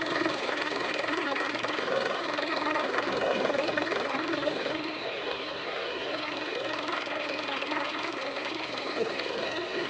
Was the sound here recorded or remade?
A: remade